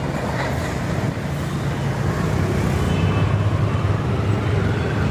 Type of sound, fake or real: real